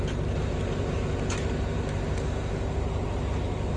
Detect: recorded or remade recorded